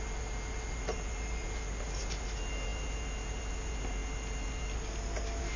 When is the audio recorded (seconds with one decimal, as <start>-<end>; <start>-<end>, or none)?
0.0-5.6